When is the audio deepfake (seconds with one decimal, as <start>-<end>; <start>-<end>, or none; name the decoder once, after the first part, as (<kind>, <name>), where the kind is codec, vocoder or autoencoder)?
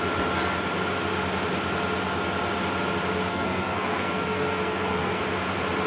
3.3-5.2 (codec, SNAC)